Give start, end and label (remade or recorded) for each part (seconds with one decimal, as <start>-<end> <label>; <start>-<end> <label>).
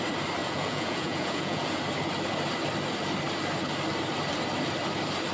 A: 0.0-0.4 recorded; 0.4-1.8 remade; 1.8-5.3 recorded